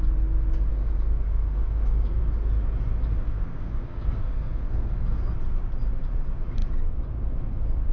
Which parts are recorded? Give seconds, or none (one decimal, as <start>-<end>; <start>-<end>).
0.0-0.7; 2.2-3.1; 5.2-7.9